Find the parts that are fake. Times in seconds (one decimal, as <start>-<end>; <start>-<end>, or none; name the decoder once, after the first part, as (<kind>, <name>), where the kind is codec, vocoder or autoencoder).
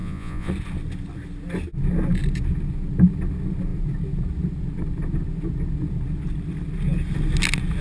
0.0-0.5 (vocoder, Vocos)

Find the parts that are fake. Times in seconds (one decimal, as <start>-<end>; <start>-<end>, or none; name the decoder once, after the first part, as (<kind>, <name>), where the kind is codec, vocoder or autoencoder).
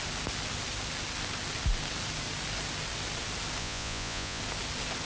3.6-4.4 (vocoder, Vocos)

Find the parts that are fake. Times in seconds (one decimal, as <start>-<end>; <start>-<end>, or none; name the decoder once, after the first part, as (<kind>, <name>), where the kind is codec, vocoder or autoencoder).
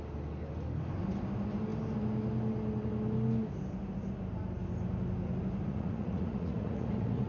5.7-7.3 (vocoder, Vocos)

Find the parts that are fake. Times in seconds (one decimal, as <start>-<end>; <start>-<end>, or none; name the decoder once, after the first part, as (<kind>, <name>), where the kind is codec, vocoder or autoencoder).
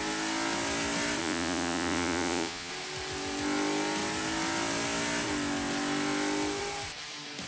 1.2-2.7 (vocoder, Vocos)